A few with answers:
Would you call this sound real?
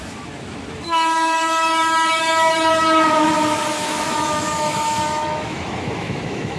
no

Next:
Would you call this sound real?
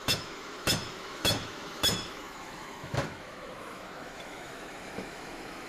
no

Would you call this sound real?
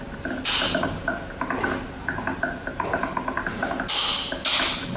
yes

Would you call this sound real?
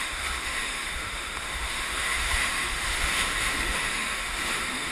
no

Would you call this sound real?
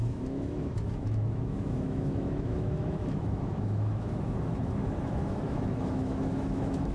no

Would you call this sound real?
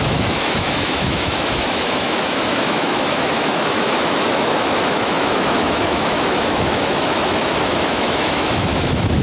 no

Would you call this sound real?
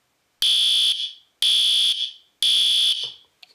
yes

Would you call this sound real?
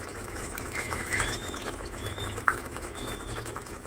no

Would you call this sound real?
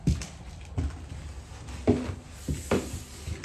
yes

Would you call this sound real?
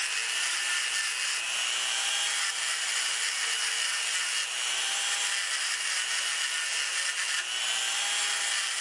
yes